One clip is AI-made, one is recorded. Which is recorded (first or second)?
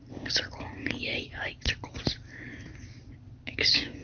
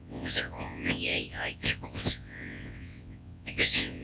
first